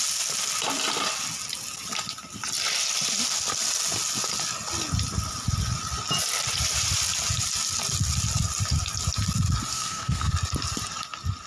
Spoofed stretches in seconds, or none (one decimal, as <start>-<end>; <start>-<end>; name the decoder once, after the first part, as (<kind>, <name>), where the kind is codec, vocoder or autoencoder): 9.7-10.3 (codec, SNAC)